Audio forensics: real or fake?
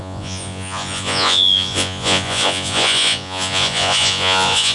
fake